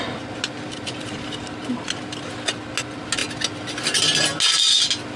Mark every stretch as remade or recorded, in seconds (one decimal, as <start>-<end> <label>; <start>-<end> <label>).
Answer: 0.0-5.2 recorded